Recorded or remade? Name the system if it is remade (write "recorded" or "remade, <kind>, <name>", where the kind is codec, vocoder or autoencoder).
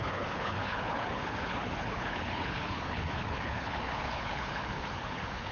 remade, codec, HILCodec